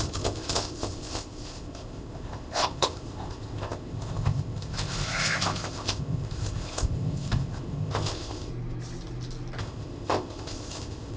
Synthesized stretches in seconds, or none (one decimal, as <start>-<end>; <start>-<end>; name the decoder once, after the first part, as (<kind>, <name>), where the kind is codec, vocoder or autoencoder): 0.0-8.5 (codec, ZipCodec); 9.6-11.2